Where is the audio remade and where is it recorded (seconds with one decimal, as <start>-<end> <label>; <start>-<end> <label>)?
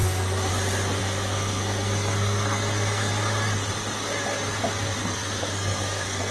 0.0-0.5 remade; 0.5-1.0 recorded; 1.0-3.1 remade; 3.1-5.0 recorded; 5.0-6.3 remade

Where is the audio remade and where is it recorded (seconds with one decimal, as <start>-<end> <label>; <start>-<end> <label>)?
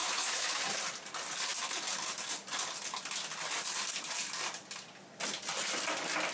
0.0-0.6 remade; 0.6-6.3 recorded